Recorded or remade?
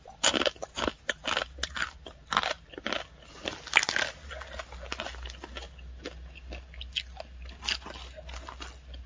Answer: recorded